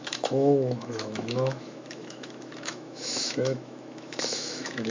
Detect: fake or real fake